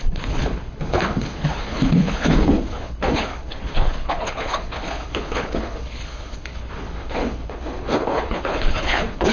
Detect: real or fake fake